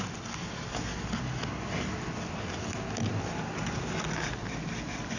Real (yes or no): yes